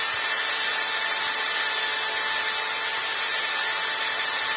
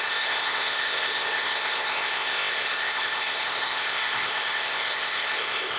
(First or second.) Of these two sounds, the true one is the first